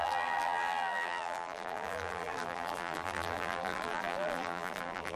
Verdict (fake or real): fake